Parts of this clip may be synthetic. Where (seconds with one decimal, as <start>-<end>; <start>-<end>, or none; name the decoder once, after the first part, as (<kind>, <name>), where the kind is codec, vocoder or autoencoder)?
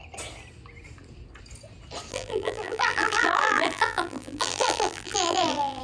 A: 2.1-5.8 (vocoder, BigVGAN v2)